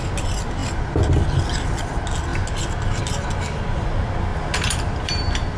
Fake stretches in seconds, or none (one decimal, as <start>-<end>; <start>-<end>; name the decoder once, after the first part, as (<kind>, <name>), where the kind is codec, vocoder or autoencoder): 4.3-5.1 (vocoder, BigVGAN v2)